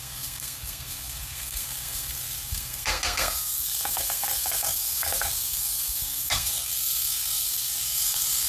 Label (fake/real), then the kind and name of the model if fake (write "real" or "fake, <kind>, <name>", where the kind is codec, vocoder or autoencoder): fake, codec, SNAC